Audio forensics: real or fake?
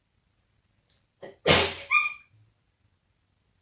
real